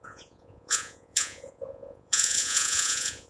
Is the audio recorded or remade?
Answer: remade